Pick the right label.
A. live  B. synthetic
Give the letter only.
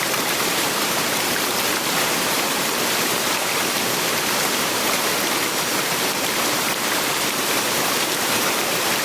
B